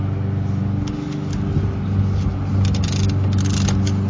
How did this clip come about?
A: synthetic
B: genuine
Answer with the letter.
B